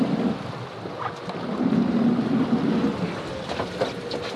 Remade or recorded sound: recorded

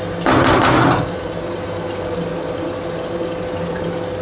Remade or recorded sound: recorded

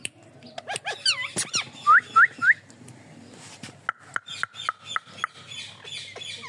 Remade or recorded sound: recorded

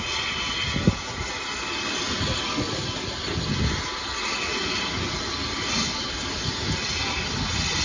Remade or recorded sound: recorded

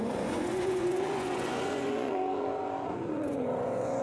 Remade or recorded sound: remade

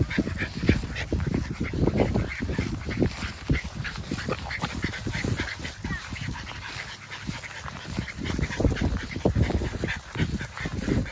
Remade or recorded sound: recorded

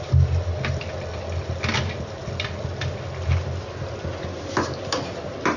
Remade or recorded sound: recorded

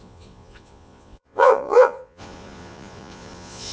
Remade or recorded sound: remade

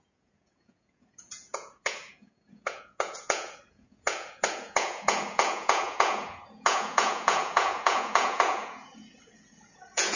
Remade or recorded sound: remade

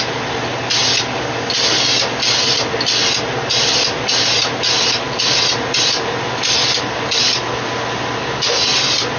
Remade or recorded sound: recorded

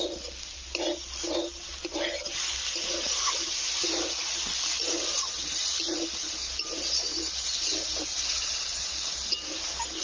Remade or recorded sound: recorded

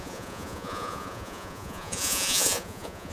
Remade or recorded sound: remade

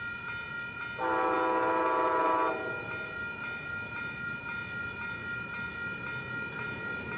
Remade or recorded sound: recorded